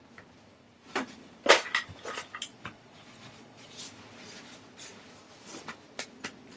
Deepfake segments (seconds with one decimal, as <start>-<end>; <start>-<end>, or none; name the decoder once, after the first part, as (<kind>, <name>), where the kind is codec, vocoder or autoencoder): 2.5-3.8 (vocoder, Vocos)